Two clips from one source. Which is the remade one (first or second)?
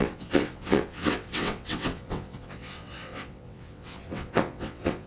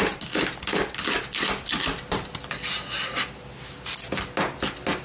first